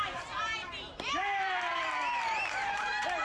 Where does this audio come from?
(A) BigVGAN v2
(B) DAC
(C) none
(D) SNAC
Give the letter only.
A